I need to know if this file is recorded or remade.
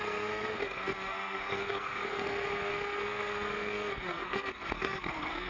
remade